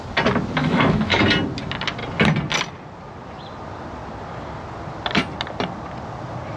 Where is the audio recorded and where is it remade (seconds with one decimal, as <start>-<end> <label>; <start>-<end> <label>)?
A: 0.0-0.6 recorded; 0.6-1.2 remade; 1.2-6.6 recorded